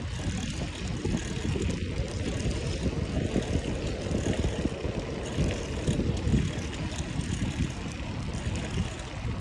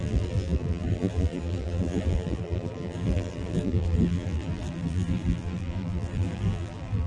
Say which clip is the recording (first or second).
first